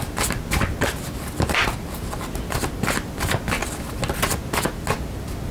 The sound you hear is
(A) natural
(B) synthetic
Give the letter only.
A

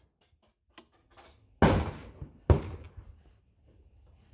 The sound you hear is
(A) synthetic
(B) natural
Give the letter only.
B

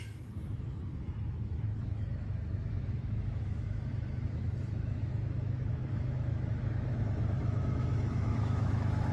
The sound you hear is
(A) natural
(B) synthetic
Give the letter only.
B